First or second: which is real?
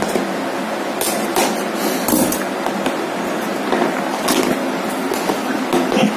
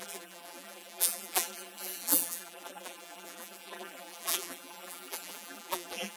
first